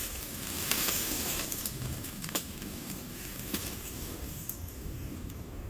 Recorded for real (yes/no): no